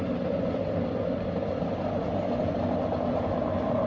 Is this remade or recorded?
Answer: recorded